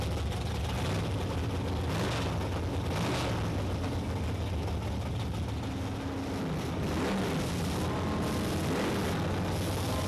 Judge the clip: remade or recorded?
recorded